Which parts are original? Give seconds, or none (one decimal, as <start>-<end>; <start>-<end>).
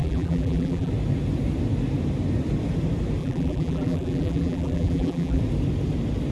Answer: 0.9-3.2; 5.4-6.3